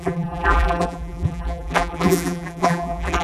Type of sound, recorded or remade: remade